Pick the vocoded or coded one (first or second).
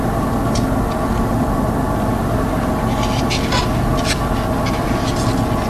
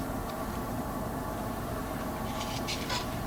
second